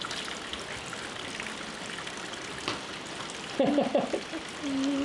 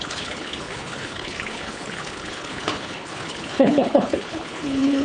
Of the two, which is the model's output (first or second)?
second